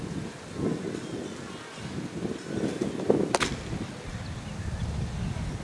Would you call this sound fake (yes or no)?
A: no